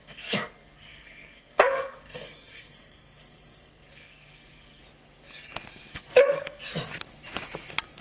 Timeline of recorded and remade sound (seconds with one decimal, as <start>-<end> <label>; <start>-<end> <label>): 0.0-4.8 remade; 4.8-5.9 recorded; 5.9-6.6 remade; 6.6-8.0 recorded